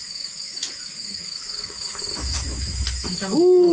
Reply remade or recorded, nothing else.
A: remade